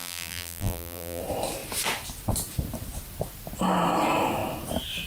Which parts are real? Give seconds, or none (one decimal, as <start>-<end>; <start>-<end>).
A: 1.2-5.1